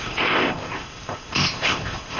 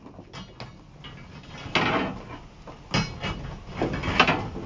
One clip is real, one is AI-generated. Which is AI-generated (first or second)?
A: first